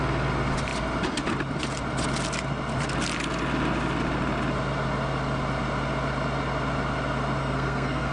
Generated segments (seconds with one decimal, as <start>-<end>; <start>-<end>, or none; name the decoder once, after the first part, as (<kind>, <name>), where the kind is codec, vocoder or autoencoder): 7.4-8.1 (codec, SNAC)